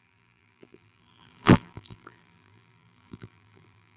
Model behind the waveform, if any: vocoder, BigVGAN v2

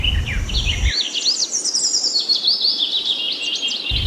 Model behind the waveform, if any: none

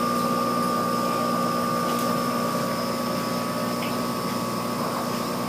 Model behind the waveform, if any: none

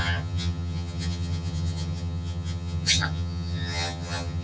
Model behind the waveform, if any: vocoder, HiFi-GAN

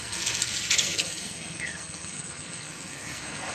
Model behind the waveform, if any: codec, SNAC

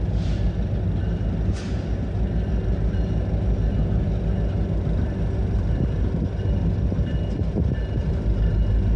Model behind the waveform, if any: none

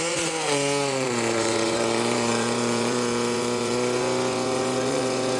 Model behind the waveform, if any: vocoder, Vocos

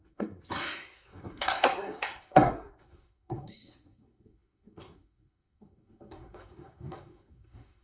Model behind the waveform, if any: codec, SNAC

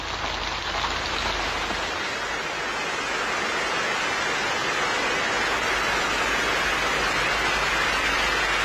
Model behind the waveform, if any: none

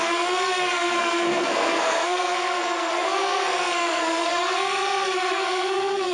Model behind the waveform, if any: codec, SNAC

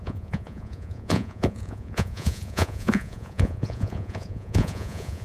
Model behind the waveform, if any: vocoder, Vocos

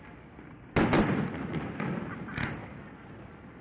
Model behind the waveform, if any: none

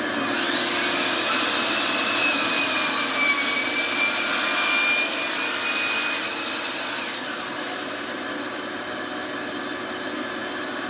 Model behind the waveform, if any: none